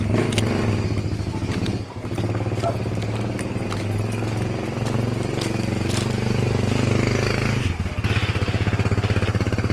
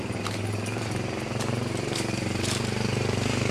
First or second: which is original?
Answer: first